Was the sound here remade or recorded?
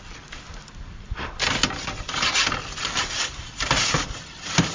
recorded